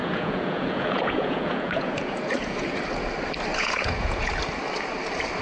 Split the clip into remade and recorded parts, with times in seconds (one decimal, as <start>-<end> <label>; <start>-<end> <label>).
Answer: 0.0-2.8 remade; 2.8-3.5 recorded; 3.5-4.3 remade; 4.3-5.4 recorded